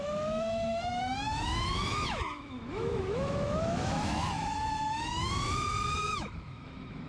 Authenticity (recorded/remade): remade